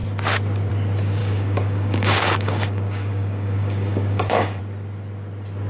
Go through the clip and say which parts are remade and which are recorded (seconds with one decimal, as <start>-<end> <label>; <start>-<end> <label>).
0.0-1.2 recorded; 1.2-4.6 remade; 4.6-5.7 recorded